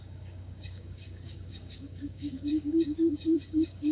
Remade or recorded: remade